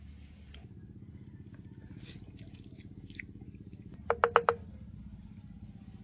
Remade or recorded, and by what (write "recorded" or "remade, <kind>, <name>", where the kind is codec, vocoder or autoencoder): recorded